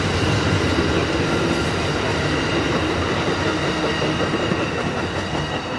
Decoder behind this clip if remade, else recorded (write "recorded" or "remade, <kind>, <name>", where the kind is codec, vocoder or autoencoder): recorded